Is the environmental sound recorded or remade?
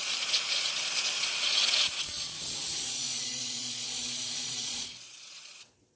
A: remade